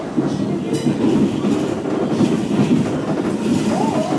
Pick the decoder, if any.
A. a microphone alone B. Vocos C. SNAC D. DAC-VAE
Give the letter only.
A